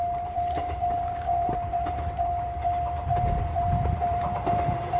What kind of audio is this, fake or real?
fake